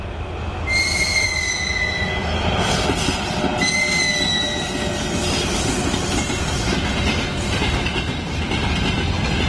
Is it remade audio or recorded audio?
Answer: recorded